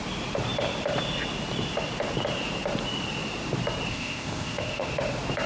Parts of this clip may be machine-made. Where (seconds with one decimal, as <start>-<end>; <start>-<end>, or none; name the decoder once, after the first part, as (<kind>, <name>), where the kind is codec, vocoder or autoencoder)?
3.9-4.9 (codec, ZipCodec)